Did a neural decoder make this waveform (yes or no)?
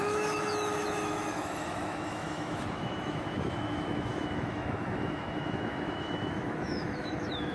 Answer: yes